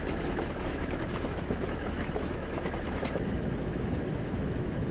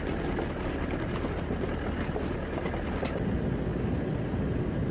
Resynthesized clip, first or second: first